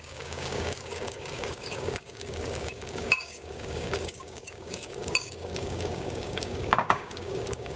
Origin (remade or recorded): remade